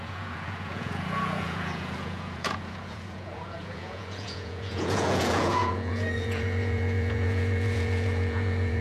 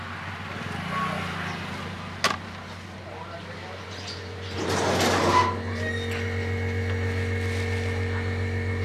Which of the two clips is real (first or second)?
second